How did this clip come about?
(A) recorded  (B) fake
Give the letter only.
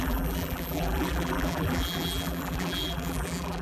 B